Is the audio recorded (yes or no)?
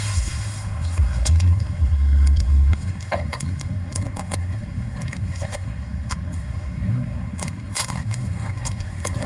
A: no